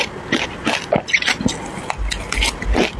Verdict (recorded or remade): recorded